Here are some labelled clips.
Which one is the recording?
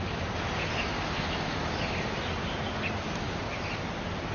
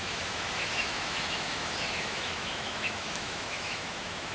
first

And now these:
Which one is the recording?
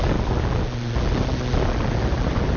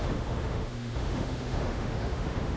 first